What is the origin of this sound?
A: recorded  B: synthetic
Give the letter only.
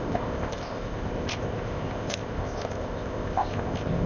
B